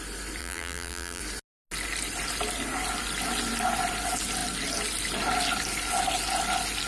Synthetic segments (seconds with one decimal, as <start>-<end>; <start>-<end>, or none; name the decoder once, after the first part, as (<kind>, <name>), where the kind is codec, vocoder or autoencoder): 0.4-1.2 (vocoder, BigVGAN v2)